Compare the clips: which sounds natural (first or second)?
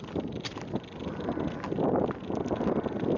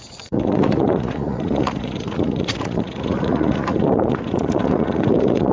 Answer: first